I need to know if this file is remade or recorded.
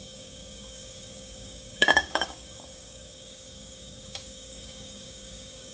remade